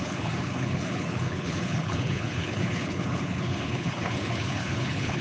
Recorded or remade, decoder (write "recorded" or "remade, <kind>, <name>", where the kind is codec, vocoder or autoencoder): remade, codec, HILCodec